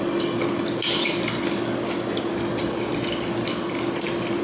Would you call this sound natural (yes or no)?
yes